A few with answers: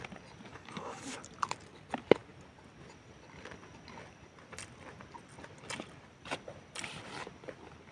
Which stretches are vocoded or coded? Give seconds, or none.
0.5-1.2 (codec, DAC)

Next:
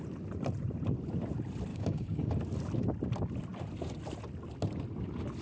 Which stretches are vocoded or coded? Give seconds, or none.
1.7-2.3 (codec, DAC)

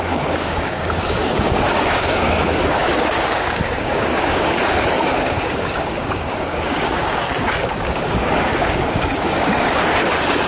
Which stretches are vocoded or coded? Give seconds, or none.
0.0-10.5 (codec, DAC)

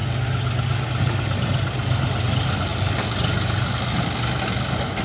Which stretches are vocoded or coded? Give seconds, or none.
none